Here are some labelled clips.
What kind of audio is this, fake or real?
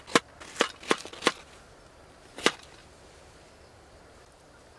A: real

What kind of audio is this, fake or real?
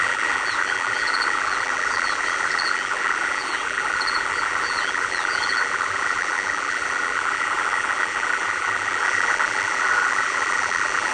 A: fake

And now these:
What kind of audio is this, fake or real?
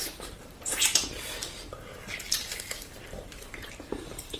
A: fake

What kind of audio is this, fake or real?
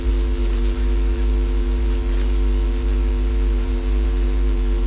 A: fake